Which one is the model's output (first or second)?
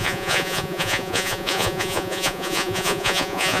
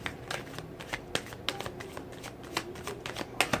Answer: first